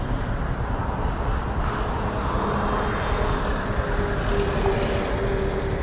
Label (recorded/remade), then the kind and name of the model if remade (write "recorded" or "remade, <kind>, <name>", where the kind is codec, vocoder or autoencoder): recorded